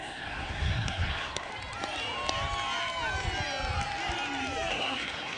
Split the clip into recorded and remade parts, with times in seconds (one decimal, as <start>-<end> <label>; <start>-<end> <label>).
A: 0.0-1.5 remade; 1.5-4.7 recorded; 4.7-5.4 remade